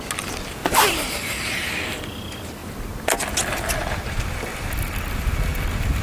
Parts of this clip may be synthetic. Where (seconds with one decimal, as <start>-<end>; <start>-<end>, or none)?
0.6-1.7